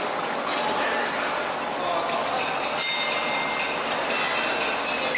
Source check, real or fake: real